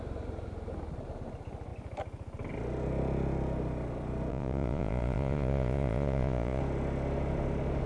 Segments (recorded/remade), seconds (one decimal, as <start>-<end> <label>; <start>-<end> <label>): 0.0-4.3 recorded; 4.3-6.6 remade; 6.6-7.9 recorded